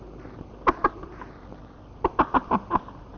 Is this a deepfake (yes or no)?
no